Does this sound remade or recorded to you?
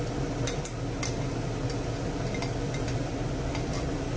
recorded